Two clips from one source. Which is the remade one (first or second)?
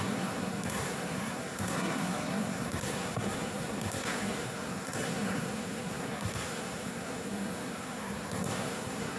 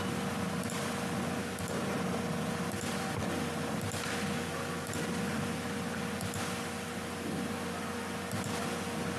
first